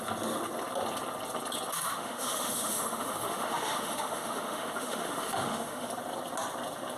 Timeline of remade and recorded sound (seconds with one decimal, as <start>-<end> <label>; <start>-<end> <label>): 0.0-1.7 recorded; 1.7-5.9 remade; 5.9-7.0 recorded